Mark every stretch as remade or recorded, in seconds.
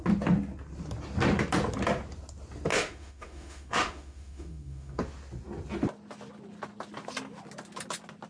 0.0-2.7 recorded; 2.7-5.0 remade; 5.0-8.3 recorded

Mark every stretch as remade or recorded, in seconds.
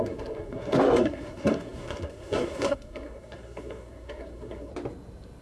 0.0-4.7 remade; 4.7-5.4 recorded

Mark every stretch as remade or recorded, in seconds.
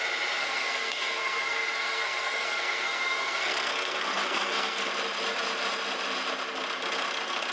0.0-0.4 recorded; 0.4-4.9 remade; 4.9-7.5 recorded